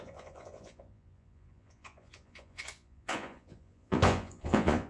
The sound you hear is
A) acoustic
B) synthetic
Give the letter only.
B